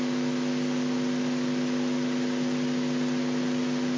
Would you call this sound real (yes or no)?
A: yes